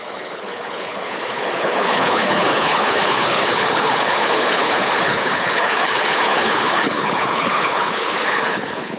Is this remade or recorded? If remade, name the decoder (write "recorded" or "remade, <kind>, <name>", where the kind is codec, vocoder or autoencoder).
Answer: remade, codec, HILCodec